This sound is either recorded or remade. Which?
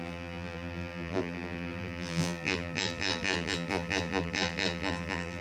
remade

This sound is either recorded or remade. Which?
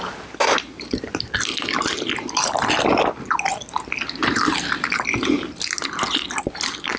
recorded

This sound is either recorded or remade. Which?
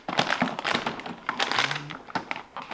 recorded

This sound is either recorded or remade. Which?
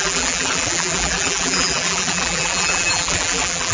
remade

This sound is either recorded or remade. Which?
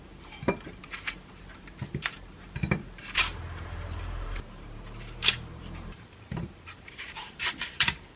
remade